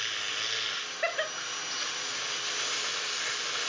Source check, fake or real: real